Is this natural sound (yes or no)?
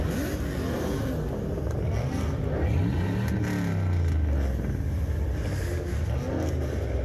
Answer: yes